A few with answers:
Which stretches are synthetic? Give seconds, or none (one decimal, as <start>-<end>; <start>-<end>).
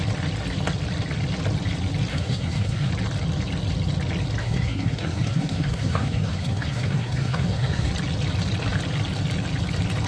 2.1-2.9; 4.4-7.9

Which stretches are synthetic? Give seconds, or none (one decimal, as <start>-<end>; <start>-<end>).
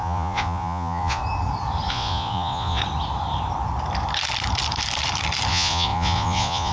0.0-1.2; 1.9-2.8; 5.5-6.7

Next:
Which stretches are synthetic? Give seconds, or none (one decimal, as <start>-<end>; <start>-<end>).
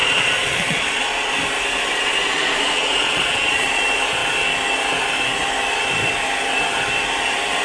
0.0-1.3; 1.9-3.8